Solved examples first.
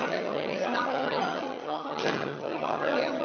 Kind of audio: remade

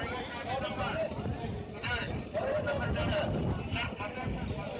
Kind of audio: recorded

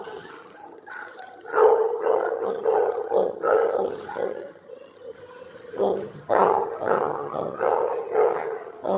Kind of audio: remade